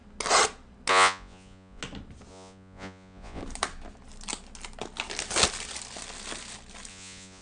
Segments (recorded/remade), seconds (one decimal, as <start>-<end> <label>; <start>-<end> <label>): 0.0-0.9 recorded; 0.9-1.8 remade; 1.8-2.3 recorded; 2.3-3.4 remade; 3.4-6.9 recorded; 6.9-7.4 remade